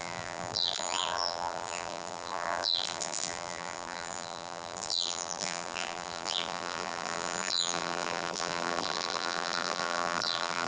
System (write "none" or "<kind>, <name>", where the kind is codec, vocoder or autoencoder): vocoder, BigVGAN v2